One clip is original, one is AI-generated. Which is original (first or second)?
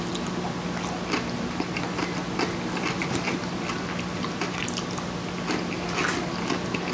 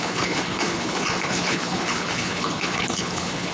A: first